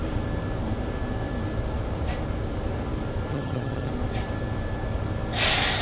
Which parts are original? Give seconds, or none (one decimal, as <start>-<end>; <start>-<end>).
0.0-3.3; 3.9-5.8